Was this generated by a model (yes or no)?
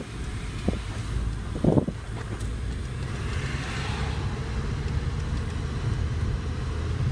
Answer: no